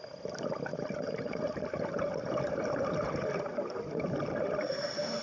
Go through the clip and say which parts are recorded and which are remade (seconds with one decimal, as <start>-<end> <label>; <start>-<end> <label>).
0.0-0.7 recorded; 0.7-3.8 remade; 3.8-5.2 recorded

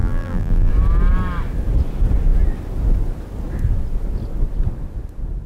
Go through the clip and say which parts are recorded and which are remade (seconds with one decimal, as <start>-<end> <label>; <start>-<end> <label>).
0.0-0.7 remade; 0.7-5.5 recorded

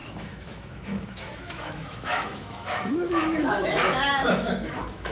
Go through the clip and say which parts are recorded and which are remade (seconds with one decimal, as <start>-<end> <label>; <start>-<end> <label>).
0.0-5.1 remade

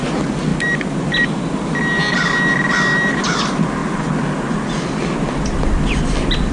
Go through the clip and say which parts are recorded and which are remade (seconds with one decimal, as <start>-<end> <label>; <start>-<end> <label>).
0.0-6.5 recorded